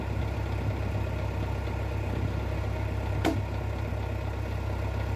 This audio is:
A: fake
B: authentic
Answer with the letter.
B